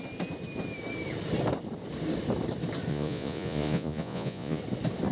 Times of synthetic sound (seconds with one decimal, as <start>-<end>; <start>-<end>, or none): 2.9-4.6